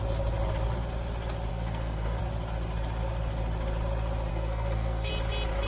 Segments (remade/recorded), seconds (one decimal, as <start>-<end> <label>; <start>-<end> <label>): 0.0-1.5 recorded; 1.5-2.2 remade; 2.2-4.3 recorded; 4.3-5.1 remade; 5.1-5.7 recorded